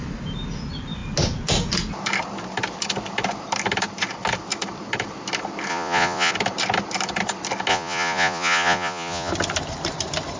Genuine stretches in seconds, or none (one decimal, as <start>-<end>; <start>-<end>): 0.0-5.7; 6.3-7.7; 9.3-10.4